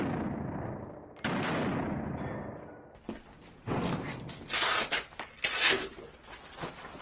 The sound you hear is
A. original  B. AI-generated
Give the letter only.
A